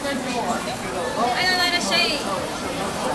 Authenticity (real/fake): fake